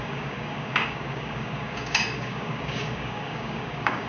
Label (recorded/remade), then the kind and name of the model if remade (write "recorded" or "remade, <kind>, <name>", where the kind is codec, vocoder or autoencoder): remade, codec, DAC